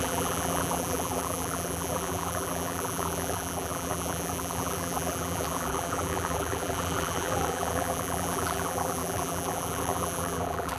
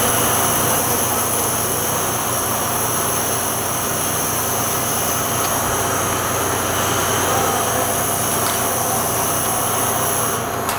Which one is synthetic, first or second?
first